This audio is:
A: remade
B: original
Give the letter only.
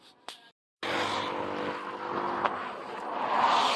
B